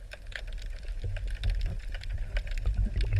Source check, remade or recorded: recorded